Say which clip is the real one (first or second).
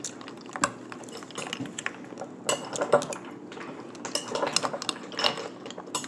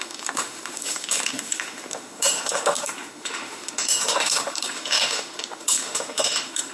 first